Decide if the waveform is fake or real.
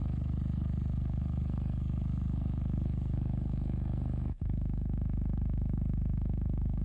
fake